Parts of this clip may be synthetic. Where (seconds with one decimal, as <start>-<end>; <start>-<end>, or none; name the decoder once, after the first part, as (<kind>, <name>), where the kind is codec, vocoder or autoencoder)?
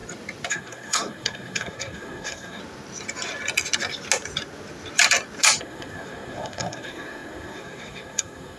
0.5-2.6 (codec, SNAC); 5.6-8.6